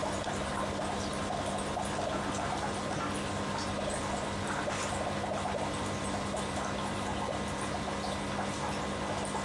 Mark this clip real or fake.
real